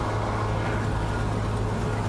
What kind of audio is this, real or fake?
real